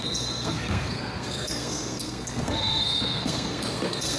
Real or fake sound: fake